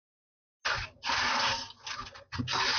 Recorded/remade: recorded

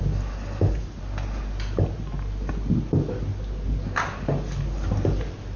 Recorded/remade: recorded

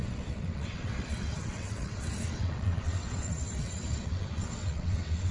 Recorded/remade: remade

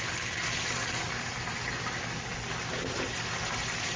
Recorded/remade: recorded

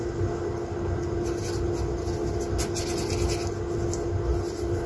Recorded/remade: recorded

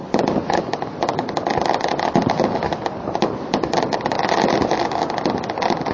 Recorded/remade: recorded